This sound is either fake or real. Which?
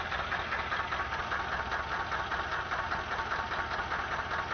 real